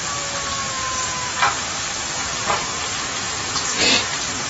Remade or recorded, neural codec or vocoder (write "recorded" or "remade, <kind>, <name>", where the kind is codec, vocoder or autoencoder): recorded